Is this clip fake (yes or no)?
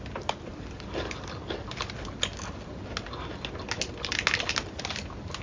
no